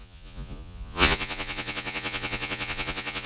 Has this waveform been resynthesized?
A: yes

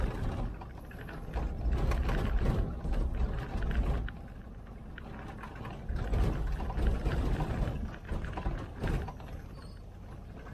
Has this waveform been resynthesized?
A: no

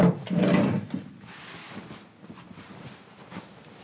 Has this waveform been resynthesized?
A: no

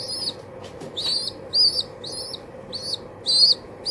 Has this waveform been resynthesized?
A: no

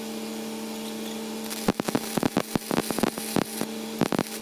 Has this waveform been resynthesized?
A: no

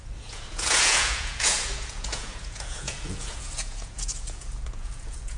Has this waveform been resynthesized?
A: yes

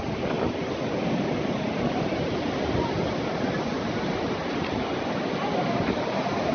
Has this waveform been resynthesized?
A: no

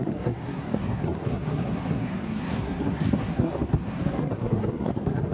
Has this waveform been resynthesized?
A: yes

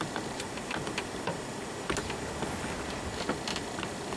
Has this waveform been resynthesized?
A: no